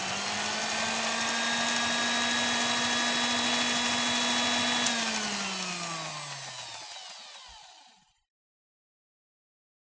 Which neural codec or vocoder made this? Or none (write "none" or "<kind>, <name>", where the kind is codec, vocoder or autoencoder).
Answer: none